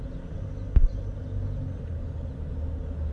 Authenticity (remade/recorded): recorded